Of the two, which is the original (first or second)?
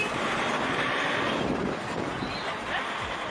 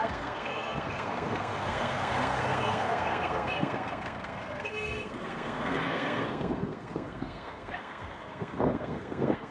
first